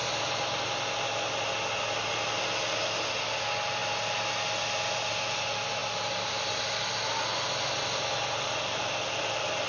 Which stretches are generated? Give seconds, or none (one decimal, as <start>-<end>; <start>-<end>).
none